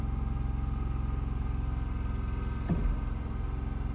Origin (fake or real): real